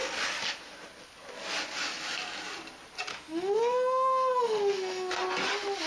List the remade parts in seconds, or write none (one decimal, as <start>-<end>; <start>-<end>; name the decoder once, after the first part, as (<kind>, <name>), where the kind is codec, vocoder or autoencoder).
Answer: 3.1-5.1 (autoencoder, DAC-VAE)